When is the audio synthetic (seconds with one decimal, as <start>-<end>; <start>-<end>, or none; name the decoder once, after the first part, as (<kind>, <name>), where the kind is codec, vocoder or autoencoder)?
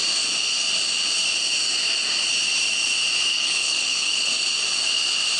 3.3-4.3 (codec, HILCodec)